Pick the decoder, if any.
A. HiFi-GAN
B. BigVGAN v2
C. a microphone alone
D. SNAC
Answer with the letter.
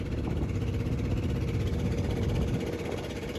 C